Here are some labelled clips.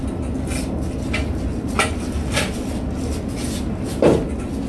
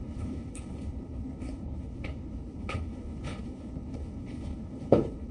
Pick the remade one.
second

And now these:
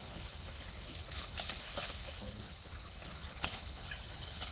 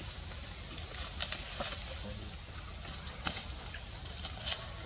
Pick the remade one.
first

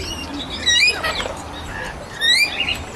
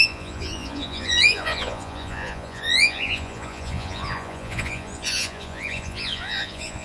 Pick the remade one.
second